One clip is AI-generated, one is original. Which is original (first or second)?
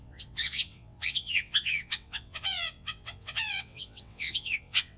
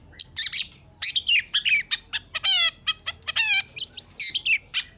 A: second